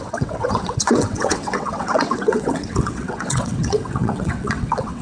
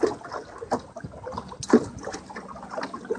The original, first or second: second